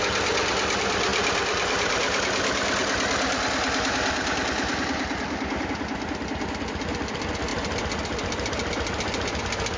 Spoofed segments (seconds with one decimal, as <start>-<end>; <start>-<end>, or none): none